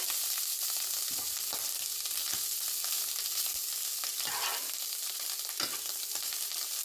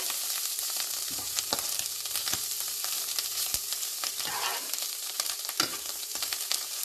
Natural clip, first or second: first